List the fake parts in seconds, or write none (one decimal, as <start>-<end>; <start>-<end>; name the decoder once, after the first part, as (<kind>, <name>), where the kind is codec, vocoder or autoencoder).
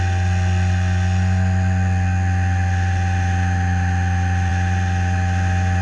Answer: none